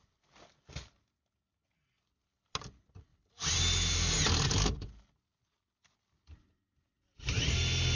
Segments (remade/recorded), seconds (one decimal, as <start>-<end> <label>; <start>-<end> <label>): 0.0-8.0 recorded